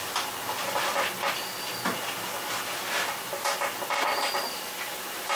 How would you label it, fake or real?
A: real